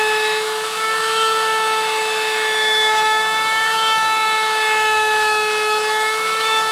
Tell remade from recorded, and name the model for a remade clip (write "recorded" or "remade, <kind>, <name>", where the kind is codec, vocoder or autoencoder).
remade, autoencoder, DAC-VAE